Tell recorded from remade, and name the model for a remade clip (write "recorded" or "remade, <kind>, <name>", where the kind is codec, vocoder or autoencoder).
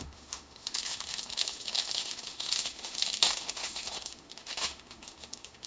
remade, autoencoder, DAC-VAE